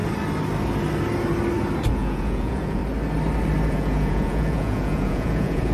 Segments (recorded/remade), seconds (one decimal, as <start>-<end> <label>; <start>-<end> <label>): 0.0-1.9 recorded; 1.9-2.8 remade; 2.8-3.7 recorded; 3.7-5.7 remade